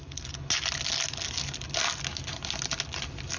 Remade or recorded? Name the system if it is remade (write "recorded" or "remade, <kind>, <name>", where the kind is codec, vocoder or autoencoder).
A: recorded